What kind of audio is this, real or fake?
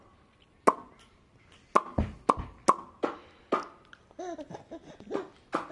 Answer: real